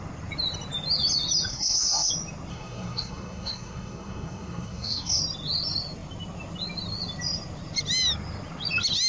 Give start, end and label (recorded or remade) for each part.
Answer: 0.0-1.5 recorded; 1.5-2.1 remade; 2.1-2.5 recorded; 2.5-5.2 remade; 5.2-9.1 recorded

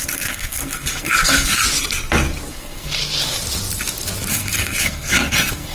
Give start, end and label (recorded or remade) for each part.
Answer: 0.0-1.6 remade; 1.6-2.5 recorded; 2.5-3.0 remade; 3.0-4.3 recorded; 4.3-5.7 remade